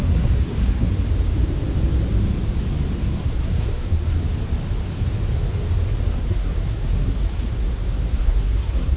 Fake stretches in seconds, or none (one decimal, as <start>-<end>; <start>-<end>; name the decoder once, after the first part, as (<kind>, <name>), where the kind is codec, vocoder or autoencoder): 0.0-0.9 (codec, SNAC); 3.0-4.2; 6.1-7.5; 8.1-9.0